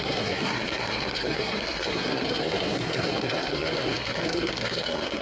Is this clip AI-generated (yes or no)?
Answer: yes